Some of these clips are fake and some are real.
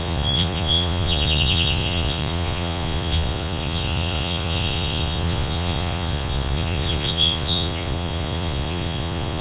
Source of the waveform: fake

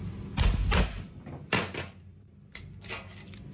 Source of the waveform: real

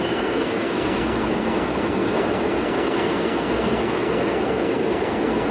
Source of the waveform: fake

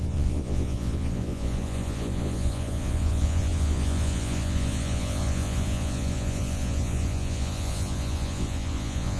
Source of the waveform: fake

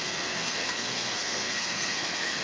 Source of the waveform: fake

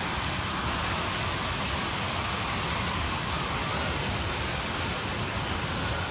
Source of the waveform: real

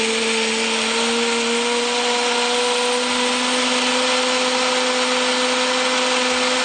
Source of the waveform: real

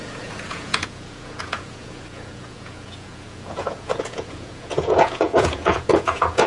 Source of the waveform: fake